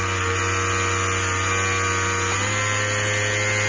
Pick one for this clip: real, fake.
real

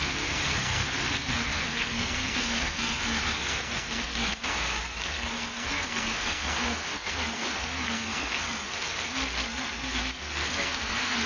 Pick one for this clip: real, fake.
fake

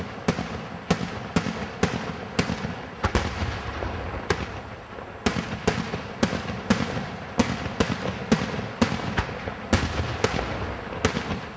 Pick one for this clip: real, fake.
real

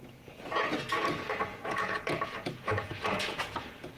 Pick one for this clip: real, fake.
fake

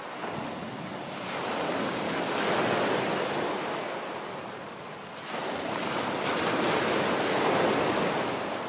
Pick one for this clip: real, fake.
real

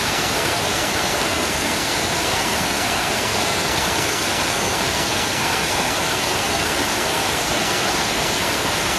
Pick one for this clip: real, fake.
fake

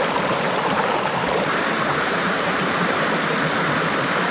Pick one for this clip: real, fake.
fake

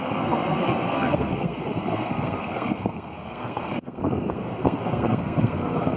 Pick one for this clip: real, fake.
fake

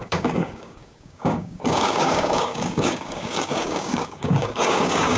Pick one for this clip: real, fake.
fake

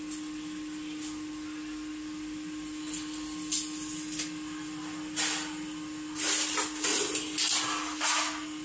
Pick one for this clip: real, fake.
real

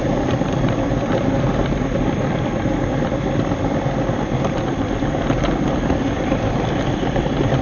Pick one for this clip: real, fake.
fake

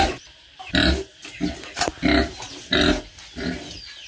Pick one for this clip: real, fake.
real